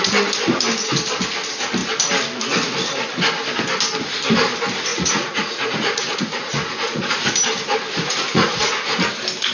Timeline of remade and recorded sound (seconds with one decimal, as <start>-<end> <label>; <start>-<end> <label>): 0.0-4.9 recorded; 4.9-7.3 remade; 7.3-7.9 recorded; 7.9-8.6 remade; 8.6-9.5 recorded